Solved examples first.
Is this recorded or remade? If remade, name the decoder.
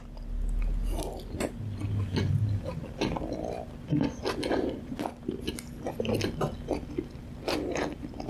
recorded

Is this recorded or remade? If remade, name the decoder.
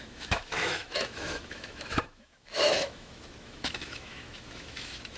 remade, autoencoder, DAC-VAE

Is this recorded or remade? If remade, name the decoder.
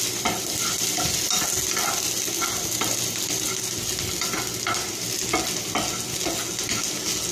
recorded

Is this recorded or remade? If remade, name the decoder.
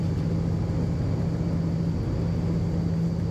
recorded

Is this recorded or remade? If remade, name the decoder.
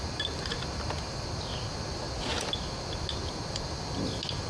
recorded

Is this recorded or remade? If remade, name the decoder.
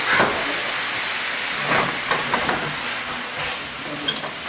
recorded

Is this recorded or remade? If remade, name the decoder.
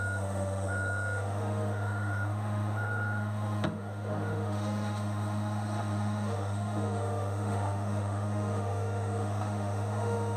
remade, autoencoder, DAC-VAE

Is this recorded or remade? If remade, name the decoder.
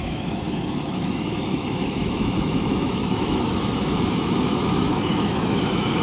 remade, autoencoder, DAC-VAE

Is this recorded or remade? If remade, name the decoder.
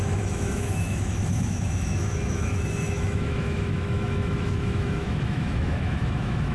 remade, autoencoder, DAC-VAE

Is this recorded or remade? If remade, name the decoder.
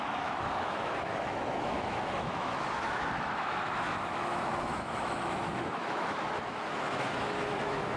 remade, autoencoder, DAC-VAE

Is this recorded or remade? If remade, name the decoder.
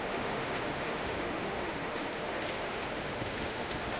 remade, autoencoder, DAC-VAE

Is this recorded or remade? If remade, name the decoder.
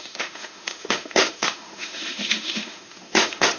remade, autoencoder, DAC-VAE